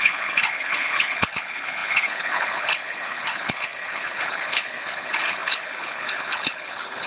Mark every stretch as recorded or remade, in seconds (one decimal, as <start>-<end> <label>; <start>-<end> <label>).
0.0-7.1 remade